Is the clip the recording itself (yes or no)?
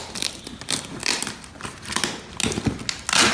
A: yes